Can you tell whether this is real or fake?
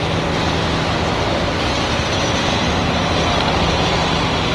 real